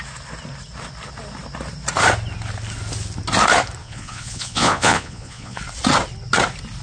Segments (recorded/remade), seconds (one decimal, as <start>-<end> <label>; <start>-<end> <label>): 0.0-3.8 recorded; 3.8-5.6 remade; 5.6-6.8 recorded